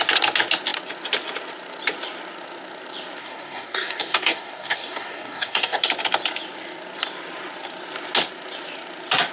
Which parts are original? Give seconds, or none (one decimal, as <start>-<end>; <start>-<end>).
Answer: 0.0-3.2; 5.8-9.3